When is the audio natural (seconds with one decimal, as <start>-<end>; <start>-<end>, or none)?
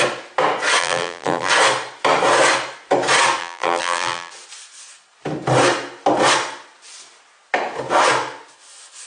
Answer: 0.0-0.8; 1.5-3.4; 4.3-9.1